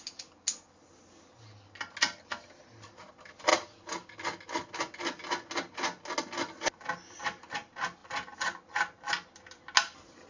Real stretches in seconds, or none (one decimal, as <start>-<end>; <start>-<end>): 0.0-10.3